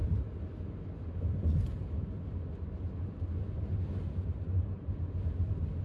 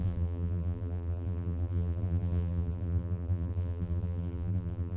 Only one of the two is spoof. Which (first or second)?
second